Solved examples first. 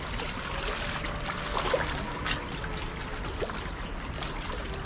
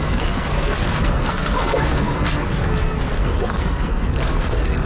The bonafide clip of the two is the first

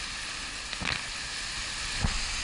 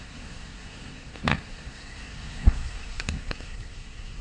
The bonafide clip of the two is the first